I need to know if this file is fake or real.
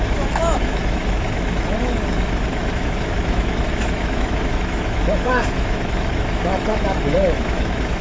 fake